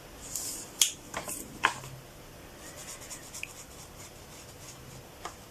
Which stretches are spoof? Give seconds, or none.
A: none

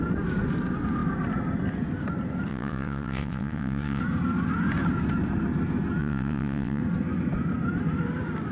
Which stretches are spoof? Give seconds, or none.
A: 2.5-4.0 (vocoder, WaveNeXt); 6.0-6.8

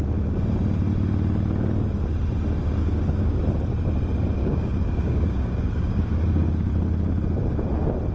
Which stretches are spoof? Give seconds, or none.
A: 2.8-3.4 (codec, DAC); 4.4-6.7

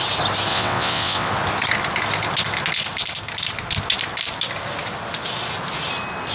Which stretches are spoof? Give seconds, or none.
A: 0.5-1.3 (vocoder, WaveNeXt)